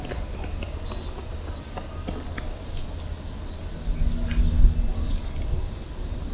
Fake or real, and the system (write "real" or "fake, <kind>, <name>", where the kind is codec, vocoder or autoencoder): real